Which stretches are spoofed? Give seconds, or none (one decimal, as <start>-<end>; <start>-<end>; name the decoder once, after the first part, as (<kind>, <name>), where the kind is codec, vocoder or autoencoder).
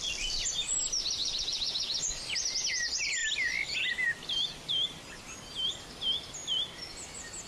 1.2-2.7 (vocoder, BigVGAN v2); 3.2-5.1; 6.4-7.1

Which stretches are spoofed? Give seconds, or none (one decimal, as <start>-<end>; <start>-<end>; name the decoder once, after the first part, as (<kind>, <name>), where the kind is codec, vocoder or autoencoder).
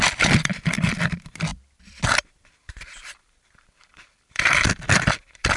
0.0-5.6 (vocoder, BigVGAN v2)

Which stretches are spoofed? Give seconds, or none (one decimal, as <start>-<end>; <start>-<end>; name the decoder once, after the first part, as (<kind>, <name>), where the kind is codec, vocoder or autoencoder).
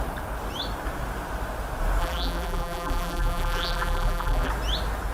2.0-4.5 (vocoder, BigVGAN v2)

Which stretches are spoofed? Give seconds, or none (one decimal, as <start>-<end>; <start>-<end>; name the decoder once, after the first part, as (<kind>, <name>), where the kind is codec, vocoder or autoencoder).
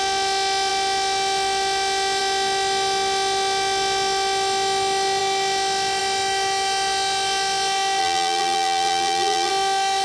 8.0-9.5 (vocoder, BigVGAN v2)